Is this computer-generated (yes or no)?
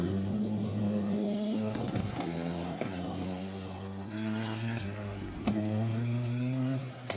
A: yes